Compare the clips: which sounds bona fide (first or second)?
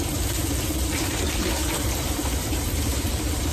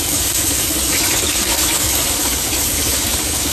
first